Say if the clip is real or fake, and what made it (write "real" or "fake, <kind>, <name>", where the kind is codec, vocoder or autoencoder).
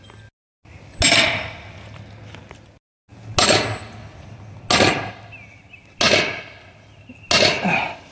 real